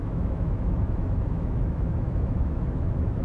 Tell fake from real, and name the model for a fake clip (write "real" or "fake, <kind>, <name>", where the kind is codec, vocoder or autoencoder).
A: fake, autoencoder, DAC-VAE